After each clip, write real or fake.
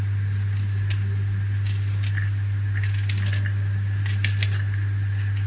real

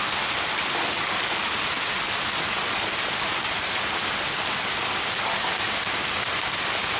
real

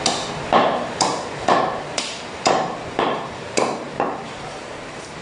fake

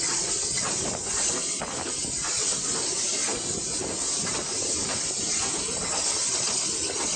real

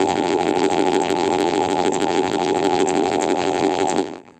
fake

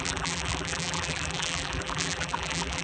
fake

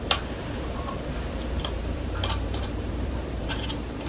fake